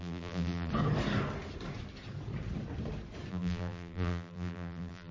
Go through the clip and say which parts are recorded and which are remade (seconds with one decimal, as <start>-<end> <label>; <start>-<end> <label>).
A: 0.0-0.7 remade; 0.7-3.3 recorded; 3.3-5.1 remade